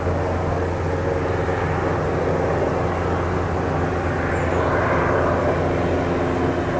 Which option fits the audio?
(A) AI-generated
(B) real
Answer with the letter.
B